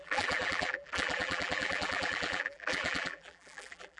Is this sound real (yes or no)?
no